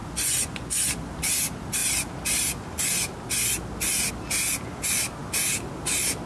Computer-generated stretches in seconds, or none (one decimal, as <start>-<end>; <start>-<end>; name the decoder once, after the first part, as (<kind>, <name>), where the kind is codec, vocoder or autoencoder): 0.0-0.9 (vocoder, Vocos)